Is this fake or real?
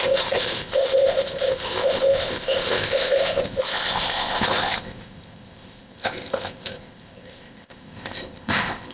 fake